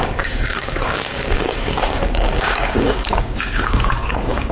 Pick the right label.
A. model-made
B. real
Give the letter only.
A